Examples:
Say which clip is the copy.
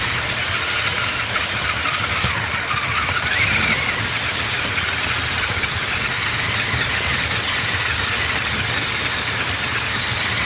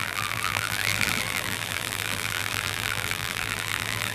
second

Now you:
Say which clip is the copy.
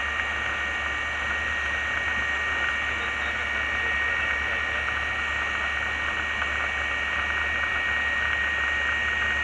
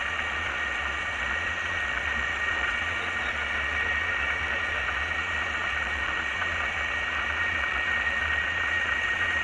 second